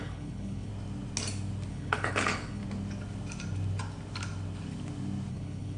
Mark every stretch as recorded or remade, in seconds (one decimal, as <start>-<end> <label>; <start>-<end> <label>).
0.0-0.7 remade; 0.7-1.7 recorded; 1.7-2.6 remade; 2.6-5.3 recorded; 5.3-5.8 remade